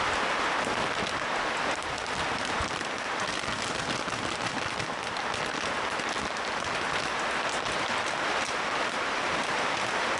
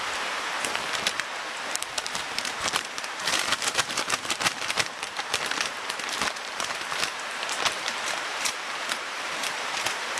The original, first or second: first